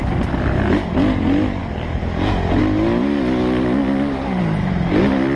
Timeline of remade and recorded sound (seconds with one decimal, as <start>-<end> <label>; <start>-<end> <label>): 0.0-5.4 recorded